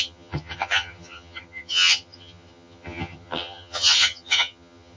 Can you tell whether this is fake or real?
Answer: fake